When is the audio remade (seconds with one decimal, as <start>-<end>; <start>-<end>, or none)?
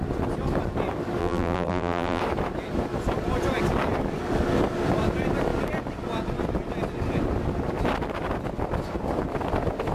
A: 1.2-2.2